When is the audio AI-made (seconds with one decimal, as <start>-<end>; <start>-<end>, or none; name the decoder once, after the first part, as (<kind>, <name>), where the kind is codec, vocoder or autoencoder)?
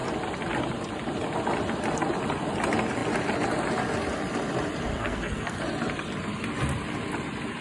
4.9-5.6 (codec, SNAC)